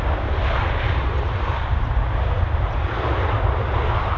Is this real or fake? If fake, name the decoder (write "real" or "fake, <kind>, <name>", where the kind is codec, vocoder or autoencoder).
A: real